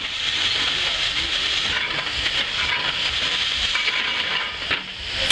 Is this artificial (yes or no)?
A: no